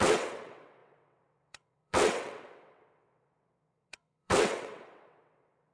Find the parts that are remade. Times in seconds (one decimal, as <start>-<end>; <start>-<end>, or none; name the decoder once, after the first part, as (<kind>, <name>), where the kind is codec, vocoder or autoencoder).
0.0-5.7 (vocoder, WaveNeXt)